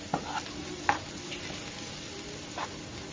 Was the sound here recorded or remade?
recorded